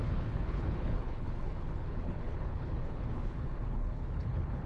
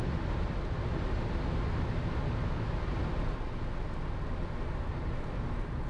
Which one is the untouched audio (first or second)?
second